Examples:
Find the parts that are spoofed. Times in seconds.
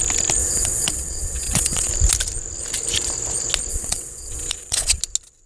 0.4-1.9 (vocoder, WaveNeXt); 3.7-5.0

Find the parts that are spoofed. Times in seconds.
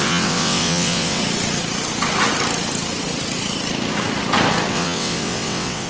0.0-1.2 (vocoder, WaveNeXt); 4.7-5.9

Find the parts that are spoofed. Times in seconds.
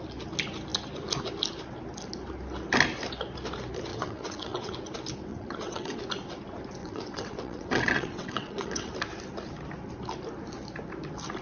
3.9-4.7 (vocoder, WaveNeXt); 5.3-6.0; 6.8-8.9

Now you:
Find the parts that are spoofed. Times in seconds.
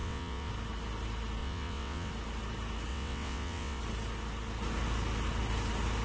0.0-0.5 (vocoder, WaveNeXt); 1.4-2.1; 2.9-3.8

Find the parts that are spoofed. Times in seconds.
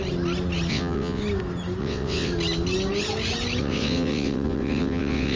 0.7-1.2 (vocoder, WaveNeXt); 1.8-2.3; 3.6-5.4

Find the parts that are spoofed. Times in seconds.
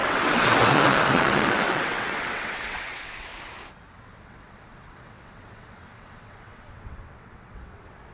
0.0-3.3 (vocoder, WaveNeXt); 4.0-8.1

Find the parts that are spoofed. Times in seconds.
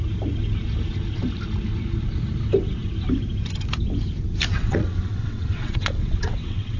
4.5-6.8 (vocoder, WaveNeXt)